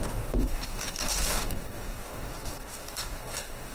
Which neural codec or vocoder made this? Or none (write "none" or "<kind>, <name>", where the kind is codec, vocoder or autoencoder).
codec, DAC